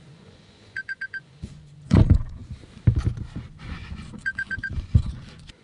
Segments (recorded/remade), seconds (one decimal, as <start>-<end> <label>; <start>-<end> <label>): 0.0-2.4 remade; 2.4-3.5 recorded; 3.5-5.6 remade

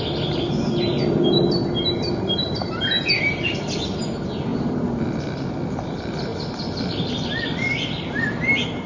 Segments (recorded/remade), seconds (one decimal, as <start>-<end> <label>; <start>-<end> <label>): 0.0-8.9 recorded

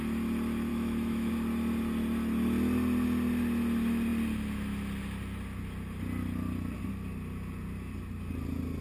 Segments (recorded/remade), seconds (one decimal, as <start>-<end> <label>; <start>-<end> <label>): 0.0-0.7 recorded; 0.7-1.3 remade; 1.3-8.8 recorded

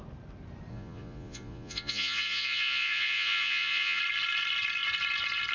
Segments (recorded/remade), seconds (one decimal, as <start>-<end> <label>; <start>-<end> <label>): 0.0-0.7 recorded; 0.7-4.0 remade; 4.0-5.5 recorded

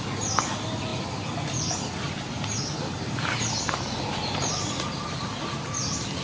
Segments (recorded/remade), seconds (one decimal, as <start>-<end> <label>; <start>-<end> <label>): 0.0-6.2 recorded